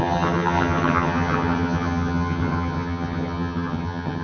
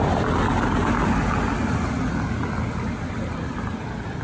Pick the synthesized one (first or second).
first